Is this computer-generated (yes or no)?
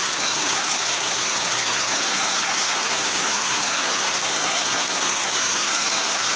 yes